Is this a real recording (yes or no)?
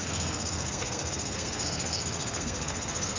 no